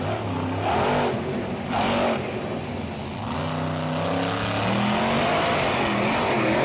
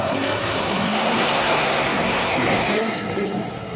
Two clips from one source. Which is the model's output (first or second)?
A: second